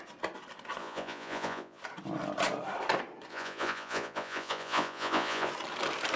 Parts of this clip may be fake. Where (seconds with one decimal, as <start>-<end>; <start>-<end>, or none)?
0.8-1.8; 3.3-5.5